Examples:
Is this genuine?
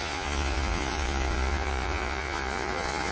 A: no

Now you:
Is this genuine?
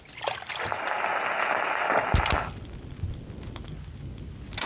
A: yes